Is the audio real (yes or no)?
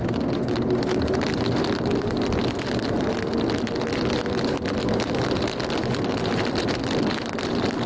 yes